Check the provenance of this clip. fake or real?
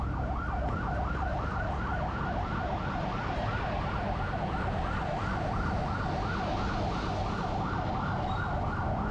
real